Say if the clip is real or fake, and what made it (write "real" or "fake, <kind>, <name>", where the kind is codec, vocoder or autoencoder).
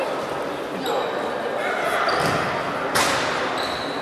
real